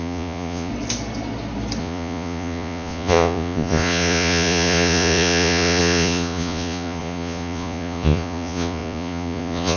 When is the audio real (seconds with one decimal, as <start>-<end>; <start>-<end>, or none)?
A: 0.7-1.8